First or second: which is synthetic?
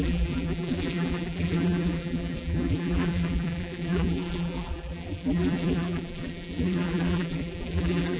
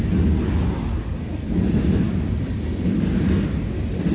first